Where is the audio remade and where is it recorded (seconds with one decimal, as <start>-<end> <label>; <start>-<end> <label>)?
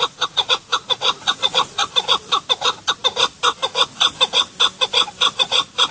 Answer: 0.0-1.8 remade; 1.8-5.3 recorded; 5.3-5.9 remade